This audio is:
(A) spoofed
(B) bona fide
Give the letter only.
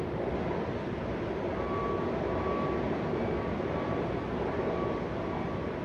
B